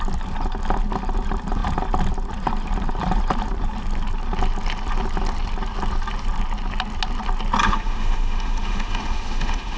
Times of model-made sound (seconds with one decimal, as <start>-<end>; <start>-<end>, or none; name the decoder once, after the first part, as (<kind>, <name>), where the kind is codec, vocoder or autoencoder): 7.6-9.8 (autoencoder, DAC-VAE)